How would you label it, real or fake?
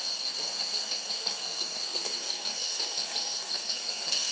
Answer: fake